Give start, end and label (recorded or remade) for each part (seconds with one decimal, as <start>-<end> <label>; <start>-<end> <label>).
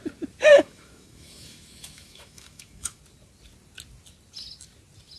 0.0-0.5 recorded; 0.5-3.0 remade; 3.0-5.2 recorded